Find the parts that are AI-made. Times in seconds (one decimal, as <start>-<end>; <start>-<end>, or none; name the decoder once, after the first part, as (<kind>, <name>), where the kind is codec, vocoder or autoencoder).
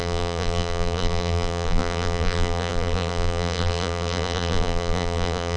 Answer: 0.0-5.6 (vocoder, BigVGAN v2)